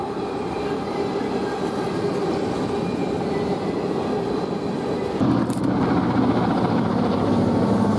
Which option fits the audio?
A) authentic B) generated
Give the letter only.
A